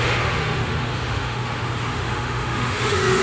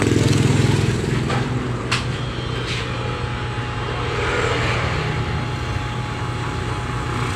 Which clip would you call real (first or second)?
second